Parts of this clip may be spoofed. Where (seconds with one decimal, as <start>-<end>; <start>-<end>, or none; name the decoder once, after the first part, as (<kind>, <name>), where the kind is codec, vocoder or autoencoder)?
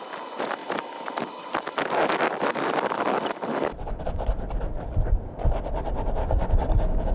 6.2-7.1 (codec, DAC)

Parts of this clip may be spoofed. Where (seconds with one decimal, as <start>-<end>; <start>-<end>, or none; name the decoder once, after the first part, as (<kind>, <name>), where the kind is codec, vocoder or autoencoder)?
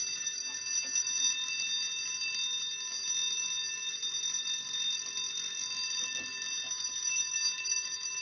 none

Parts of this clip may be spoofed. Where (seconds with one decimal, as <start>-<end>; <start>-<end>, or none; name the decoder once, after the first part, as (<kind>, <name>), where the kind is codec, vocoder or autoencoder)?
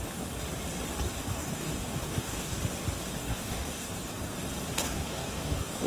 1.3-2.6 (codec, DAC); 3.2-3.9; 4.8-5.9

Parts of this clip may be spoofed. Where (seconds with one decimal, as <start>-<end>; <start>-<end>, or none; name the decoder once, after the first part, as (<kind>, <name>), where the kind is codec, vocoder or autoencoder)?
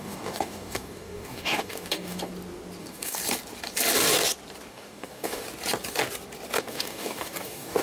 0.0-2.3 (codec, DAC); 2.8-3.2; 4.7-5.4; 6.6-7.8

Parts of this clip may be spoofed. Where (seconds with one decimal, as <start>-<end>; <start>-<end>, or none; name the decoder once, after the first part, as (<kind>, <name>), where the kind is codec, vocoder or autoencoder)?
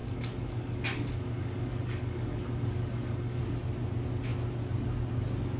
0.0-3.4 (codec, DAC)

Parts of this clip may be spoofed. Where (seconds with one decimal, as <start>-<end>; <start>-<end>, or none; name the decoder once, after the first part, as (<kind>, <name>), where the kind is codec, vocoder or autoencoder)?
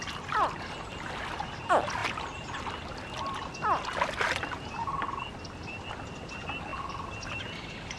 none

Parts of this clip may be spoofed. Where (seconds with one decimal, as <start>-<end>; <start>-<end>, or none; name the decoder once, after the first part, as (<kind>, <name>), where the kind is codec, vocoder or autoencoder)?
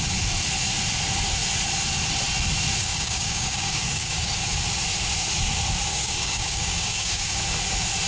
2.8-4.3 (codec, DAC); 5.9-7.4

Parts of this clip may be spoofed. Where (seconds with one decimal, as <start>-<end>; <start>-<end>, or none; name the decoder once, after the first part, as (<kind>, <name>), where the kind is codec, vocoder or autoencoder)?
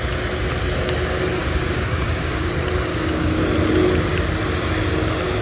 1.4-2.5 (codec, DAC); 2.9-3.4